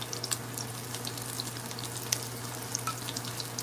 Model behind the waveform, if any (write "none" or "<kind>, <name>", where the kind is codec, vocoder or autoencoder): none